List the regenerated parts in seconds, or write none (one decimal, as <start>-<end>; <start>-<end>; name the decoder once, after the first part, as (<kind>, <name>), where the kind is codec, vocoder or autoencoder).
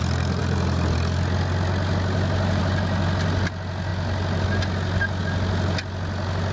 none